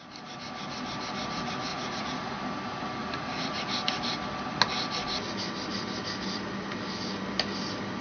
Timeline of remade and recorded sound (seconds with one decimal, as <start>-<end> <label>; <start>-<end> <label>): 0.0-1.7 recorded; 1.7-2.4 remade; 2.4-3.0 recorded; 3.0-3.6 remade; 3.6-8.0 recorded